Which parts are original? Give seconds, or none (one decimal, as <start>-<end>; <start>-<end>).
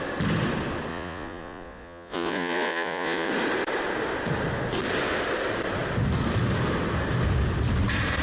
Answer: 0.0-0.9; 3.3-8.2